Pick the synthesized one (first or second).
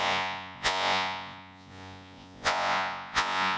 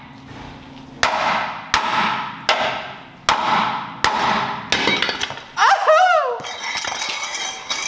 first